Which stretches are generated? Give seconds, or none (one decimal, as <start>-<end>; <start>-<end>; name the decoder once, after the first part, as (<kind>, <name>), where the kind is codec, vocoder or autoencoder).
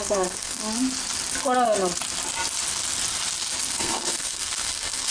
0.0-0.6 (codec, SNAC); 3.7-5.1